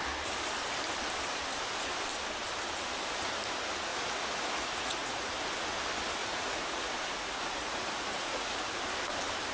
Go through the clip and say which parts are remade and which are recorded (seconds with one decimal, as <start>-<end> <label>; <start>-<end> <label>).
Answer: 0.0-3.9 recorded; 3.9-5.3 remade; 5.3-6.2 recorded; 6.2-8.7 remade; 8.7-9.5 recorded